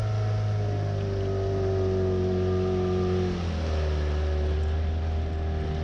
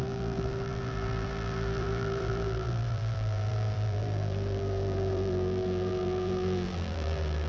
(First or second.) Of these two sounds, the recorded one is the first